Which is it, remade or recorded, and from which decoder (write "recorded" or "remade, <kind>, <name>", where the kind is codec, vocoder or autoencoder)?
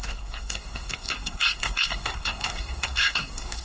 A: remade, codec, SNAC